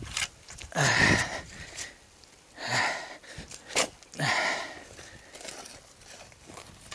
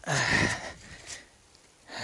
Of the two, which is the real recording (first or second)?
second